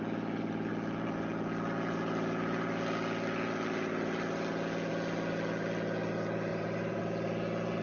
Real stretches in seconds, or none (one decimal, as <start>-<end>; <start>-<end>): 0.0-6.5; 7.0-7.8